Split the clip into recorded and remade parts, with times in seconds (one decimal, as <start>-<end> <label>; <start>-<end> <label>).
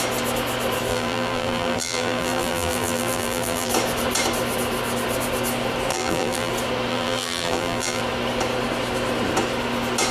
0.0-0.9 recorded; 0.9-3.7 remade; 3.7-5.9 recorded; 5.9-6.5 remade; 6.5-6.9 recorded; 6.9-8.0 remade; 8.0-10.1 recorded